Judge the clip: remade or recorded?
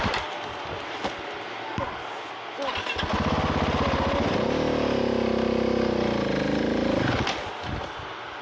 recorded